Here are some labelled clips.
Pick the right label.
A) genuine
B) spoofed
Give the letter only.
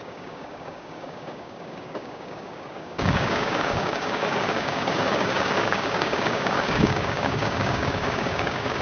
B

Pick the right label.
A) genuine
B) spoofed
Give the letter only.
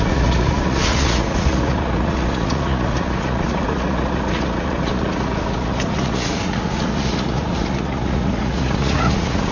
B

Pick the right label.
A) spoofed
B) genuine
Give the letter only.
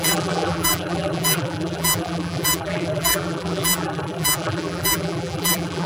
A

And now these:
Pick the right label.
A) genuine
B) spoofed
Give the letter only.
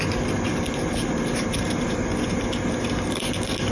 A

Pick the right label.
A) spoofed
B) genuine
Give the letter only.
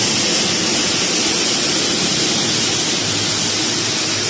B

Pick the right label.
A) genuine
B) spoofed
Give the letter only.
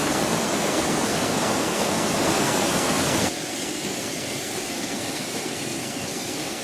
B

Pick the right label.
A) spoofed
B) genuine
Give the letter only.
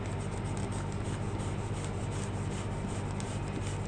B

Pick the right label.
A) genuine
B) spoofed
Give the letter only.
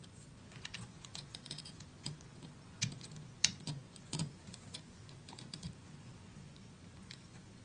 B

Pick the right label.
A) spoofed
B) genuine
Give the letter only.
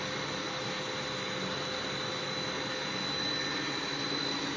B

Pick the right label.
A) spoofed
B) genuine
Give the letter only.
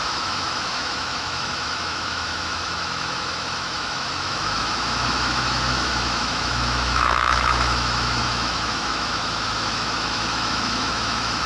A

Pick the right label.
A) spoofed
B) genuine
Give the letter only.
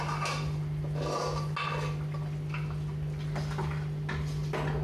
B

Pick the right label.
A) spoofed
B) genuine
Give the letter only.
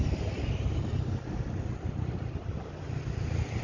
B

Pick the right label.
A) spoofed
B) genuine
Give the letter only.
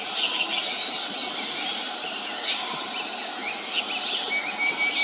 B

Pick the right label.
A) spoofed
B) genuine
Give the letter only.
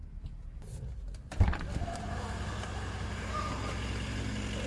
B